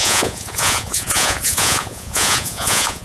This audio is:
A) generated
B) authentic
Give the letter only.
A